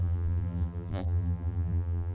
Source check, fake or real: fake